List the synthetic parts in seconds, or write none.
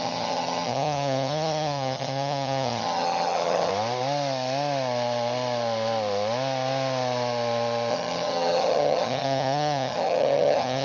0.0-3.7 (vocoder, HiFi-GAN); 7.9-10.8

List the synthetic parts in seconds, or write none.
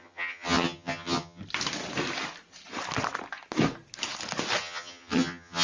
0.0-1.4 (vocoder, HiFi-GAN); 4.6-5.6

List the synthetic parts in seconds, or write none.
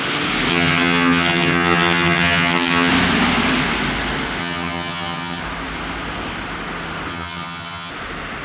0.5-2.9 (vocoder, HiFi-GAN); 4.4-5.4; 7.1-7.9